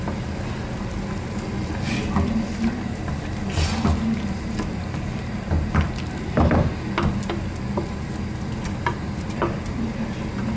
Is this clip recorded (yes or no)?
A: yes